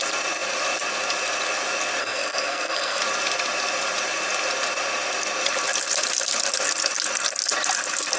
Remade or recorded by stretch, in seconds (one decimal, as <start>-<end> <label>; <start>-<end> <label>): 0.0-2.0 recorded; 2.0-3.0 remade; 3.0-8.2 recorded